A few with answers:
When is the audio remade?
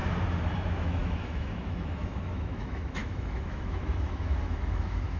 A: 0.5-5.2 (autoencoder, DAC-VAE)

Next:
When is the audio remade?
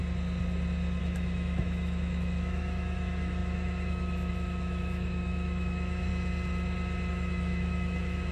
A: 1.0-6.1 (autoencoder, DAC-VAE); 7.1-8.3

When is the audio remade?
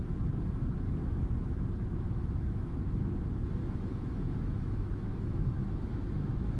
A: 1.0-2.9 (autoencoder, DAC-VAE); 3.6-6.6